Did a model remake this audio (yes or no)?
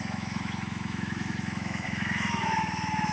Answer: yes